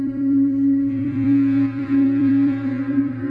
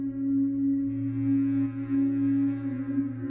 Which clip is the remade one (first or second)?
first